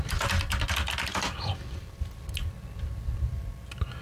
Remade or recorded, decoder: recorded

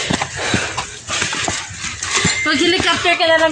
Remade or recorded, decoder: recorded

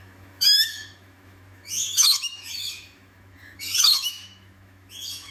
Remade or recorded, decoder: remade, autoencoder, DAC-VAE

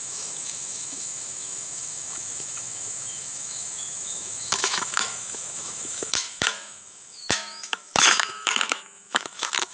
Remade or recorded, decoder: remade, autoencoder, DAC-VAE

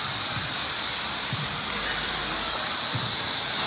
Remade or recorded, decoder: recorded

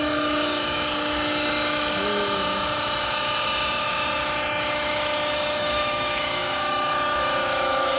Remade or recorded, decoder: remade, autoencoder, DAC-VAE